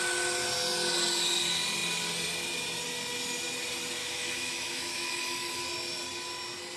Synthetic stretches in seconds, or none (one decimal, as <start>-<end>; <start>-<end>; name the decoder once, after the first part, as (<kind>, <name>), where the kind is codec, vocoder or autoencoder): 4.0-5.6 (autoencoder, DAC-VAE)